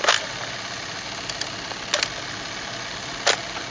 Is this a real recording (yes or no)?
yes